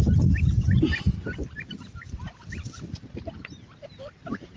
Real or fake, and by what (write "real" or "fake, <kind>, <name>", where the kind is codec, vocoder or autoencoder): real